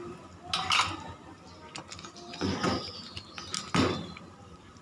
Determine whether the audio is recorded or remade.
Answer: recorded